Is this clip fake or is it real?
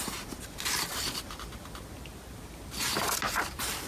real